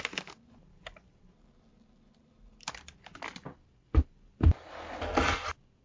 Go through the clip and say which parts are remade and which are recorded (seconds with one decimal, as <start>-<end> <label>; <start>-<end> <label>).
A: 0.0-5.8 recorded